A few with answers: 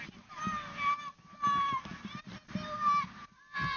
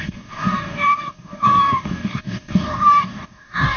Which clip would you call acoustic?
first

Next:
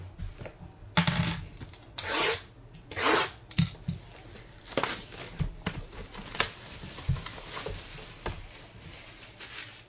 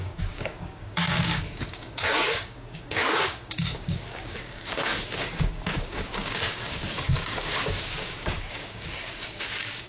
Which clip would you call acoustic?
first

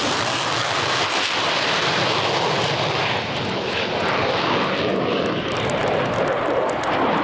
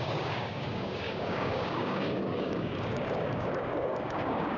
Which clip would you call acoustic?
first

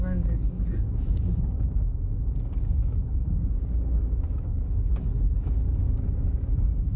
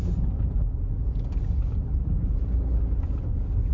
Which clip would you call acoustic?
second